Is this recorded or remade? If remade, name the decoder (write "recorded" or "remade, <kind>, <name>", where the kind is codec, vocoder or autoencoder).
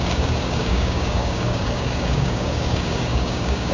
remade, codec, DAC